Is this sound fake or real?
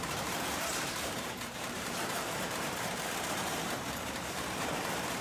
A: fake